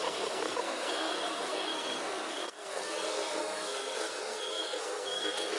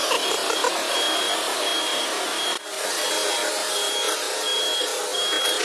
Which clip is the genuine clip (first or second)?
second